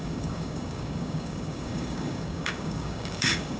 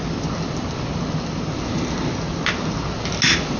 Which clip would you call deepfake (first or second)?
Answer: first